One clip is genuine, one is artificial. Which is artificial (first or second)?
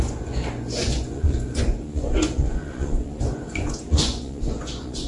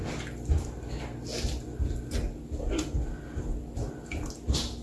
first